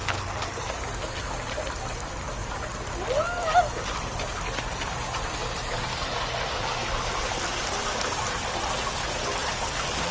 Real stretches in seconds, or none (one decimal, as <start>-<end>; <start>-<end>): 0.0-9.4